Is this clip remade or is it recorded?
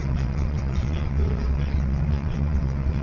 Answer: remade